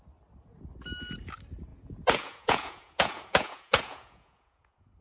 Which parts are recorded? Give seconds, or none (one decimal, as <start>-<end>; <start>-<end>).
0.0-1.7